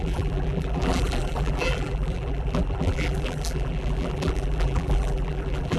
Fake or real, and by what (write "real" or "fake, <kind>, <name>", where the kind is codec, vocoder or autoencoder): fake, vocoder, BigVGAN v2